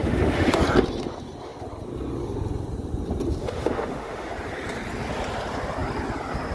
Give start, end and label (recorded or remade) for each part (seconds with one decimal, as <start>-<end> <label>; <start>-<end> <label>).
0.0-0.6 remade; 0.6-3.4 recorded; 3.4-4.3 remade; 4.3-6.5 recorded